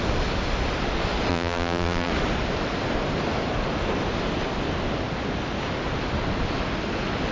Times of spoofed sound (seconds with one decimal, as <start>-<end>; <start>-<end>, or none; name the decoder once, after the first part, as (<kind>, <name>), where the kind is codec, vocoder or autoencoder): 1.3-2.1 (vocoder, BigVGAN v2)